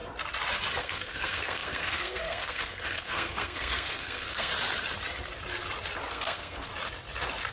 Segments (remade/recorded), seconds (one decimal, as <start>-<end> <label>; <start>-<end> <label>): 0.0-0.8 recorded; 0.8-4.5 remade; 4.5-6.1 recorded; 6.1-6.7 remade; 6.7-7.5 recorded